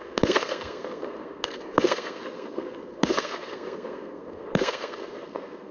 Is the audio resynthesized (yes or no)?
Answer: yes